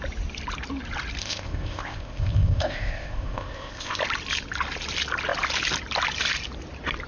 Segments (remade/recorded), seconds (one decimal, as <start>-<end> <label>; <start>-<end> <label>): 0.0-1.2 recorded; 1.2-4.0 remade; 4.0-7.1 recorded